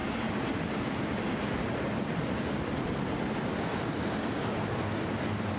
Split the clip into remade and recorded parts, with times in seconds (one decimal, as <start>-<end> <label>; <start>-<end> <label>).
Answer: 0.0-2.2 remade; 2.2-3.7 recorded; 3.7-4.3 remade; 4.3-5.6 recorded